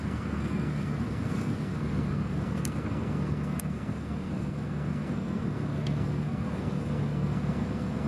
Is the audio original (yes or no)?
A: no